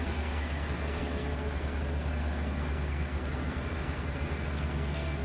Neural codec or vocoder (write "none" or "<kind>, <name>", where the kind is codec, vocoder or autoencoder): codec, SNAC